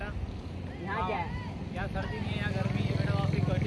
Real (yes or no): yes